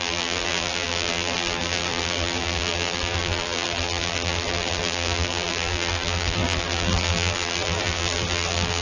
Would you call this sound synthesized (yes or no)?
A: yes